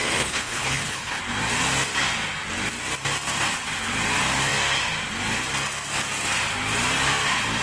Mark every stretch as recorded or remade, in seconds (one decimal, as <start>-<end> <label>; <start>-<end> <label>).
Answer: 0.0-1.2 remade; 1.2-7.6 recorded